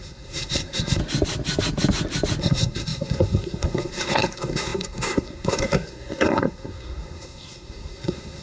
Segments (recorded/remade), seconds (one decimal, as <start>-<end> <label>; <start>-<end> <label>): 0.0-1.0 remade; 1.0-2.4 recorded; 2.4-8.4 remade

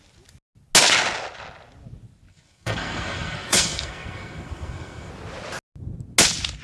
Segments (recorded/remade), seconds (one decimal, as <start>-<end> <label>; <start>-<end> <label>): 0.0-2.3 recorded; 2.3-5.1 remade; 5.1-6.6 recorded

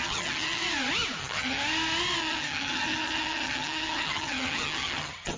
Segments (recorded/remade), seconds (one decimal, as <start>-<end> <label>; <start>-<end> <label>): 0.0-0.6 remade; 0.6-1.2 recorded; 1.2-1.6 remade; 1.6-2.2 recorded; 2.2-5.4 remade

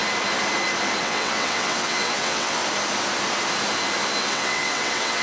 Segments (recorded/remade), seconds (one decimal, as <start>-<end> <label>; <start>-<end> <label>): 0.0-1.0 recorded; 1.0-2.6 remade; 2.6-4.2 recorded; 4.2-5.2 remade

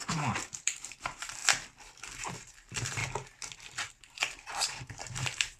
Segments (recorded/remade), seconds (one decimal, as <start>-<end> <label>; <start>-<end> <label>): 0.0-1.4 remade; 1.4-2.3 recorded; 2.3-3.0 remade; 3.0-3.9 recorded; 3.9-5.6 remade

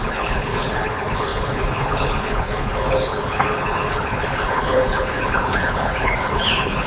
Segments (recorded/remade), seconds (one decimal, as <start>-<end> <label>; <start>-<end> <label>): 0.0-6.9 remade